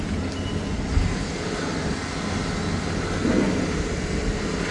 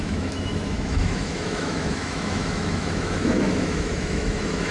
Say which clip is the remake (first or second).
second